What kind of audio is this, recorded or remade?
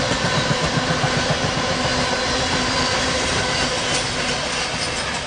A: recorded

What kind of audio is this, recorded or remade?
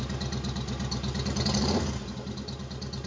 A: recorded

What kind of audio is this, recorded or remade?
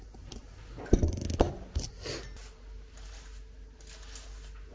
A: recorded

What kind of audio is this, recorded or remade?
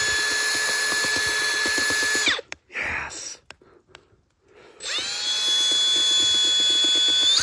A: recorded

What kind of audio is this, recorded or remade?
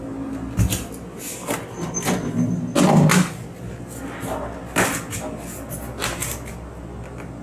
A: recorded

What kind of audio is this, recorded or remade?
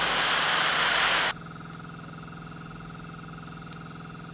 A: recorded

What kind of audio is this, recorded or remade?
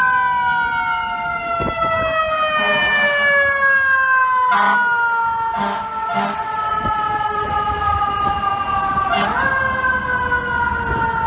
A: recorded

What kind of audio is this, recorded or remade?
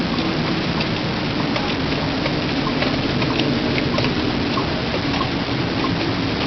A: recorded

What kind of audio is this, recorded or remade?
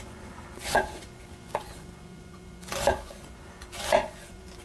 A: remade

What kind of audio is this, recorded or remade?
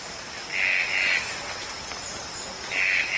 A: recorded